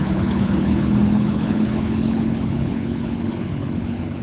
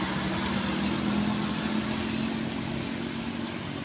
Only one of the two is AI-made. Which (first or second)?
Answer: first